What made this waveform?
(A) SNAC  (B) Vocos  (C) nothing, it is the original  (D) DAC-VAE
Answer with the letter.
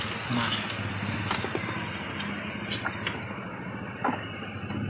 C